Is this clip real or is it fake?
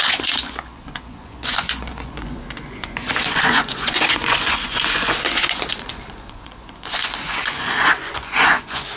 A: fake